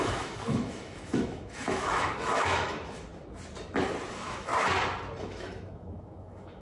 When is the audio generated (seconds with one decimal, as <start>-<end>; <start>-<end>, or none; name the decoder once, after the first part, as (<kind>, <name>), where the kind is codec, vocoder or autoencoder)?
0.0-3.1 (autoencoder, DAC-VAE); 4.1-4.5; 5.2-6.6